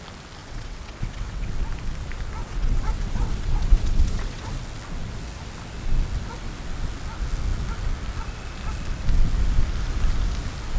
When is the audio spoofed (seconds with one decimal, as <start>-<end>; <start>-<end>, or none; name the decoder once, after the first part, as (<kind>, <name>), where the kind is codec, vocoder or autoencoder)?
0.4-1.5 (vocoder, WaveNeXt); 2.4-4.6